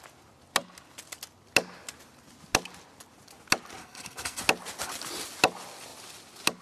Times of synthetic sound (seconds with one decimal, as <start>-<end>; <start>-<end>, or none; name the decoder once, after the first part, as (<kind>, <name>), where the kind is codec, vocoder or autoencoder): 3.8-4.4 (codec, SNAC)